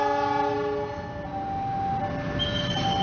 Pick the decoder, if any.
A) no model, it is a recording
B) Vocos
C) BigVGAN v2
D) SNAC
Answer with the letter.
A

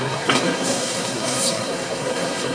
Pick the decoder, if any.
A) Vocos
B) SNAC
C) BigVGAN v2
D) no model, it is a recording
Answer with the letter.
B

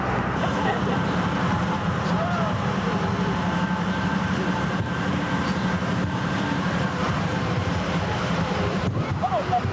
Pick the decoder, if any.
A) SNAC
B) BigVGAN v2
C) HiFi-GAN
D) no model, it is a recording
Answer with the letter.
B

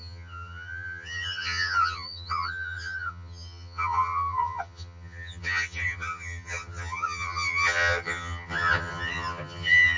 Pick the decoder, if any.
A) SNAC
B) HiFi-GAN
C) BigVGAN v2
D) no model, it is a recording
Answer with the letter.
B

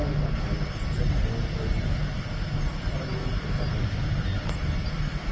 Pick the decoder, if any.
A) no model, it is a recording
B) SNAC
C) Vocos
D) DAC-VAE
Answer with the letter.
A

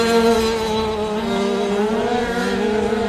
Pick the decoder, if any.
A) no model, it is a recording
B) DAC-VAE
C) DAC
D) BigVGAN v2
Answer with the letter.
A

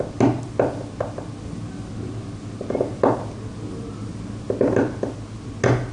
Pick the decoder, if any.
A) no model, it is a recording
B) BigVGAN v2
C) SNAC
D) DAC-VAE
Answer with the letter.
A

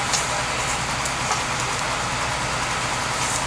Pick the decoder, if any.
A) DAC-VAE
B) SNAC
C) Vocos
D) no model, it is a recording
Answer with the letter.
D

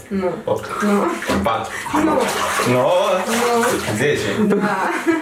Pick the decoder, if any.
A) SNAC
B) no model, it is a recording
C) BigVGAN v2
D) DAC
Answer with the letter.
B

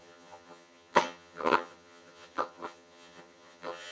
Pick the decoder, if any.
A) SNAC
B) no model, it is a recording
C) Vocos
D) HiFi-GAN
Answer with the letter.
D